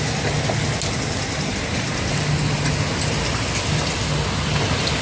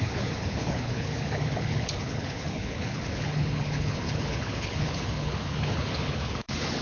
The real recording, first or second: first